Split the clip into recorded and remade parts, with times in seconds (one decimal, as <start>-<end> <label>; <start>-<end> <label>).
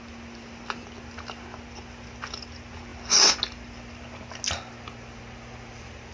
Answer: 0.0-6.1 recorded